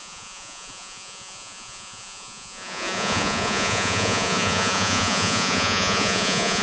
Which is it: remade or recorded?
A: remade